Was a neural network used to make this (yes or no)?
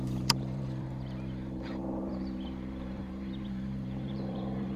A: yes